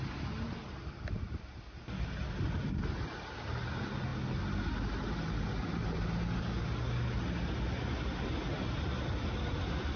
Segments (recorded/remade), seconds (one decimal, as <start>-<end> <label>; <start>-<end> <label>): 0.0-10.0 recorded